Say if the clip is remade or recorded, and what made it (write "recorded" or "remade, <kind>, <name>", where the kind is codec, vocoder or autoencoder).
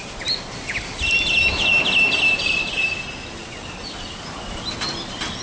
recorded